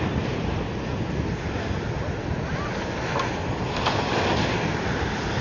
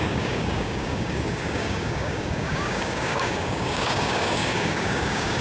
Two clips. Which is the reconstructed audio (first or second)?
second